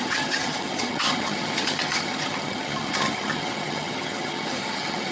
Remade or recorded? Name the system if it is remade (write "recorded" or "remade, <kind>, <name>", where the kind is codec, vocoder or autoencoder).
remade, vocoder, HiFi-GAN